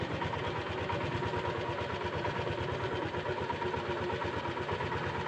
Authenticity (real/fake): real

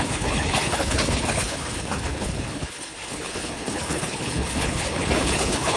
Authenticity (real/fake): fake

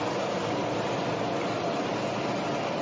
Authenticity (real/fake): real